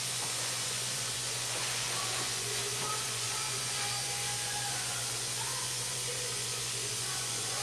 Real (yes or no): no